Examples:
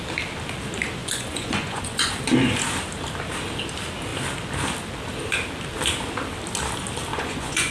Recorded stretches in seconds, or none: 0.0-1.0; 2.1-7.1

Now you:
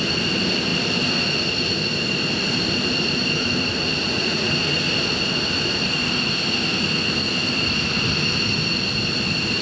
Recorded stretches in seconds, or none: 0.0-4.0; 4.5-9.6

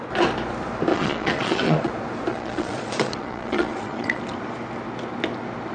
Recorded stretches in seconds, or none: 0.0-0.9; 1.9-2.3; 4.2-5.7

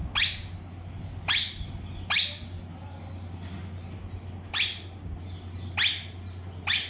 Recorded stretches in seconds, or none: 0.0-6.9

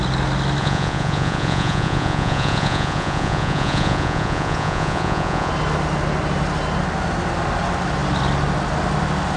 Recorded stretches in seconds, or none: 0.0-0.6; 5.5-9.4

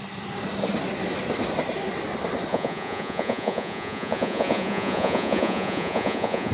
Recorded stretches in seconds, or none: 0.0-2.5

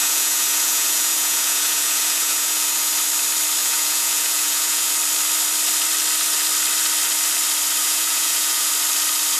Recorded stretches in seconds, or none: 2.9-3.6; 4.9-7.8; 8.7-9.4

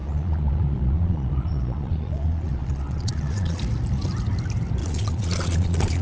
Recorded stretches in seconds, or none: 3.6-4.8